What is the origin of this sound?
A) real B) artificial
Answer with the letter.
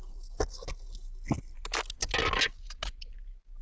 A